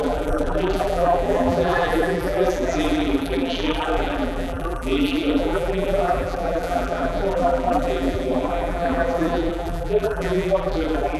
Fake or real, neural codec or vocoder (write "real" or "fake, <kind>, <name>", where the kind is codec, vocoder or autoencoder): fake, vocoder, BigVGAN v2